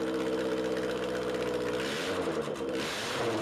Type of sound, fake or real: fake